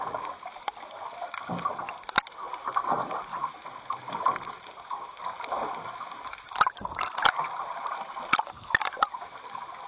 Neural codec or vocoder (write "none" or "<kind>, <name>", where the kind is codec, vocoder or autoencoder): none